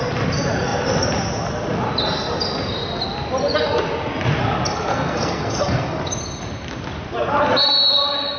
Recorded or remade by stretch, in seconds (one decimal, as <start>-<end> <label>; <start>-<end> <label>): 0.0-4.9 recorded; 4.9-6.0 remade; 6.0-8.4 recorded